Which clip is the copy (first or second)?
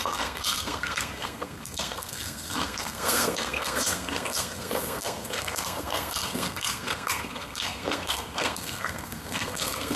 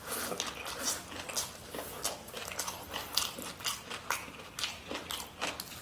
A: first